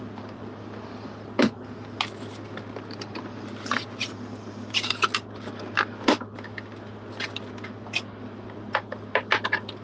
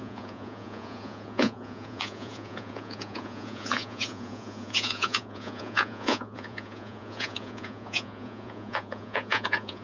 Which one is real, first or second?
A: first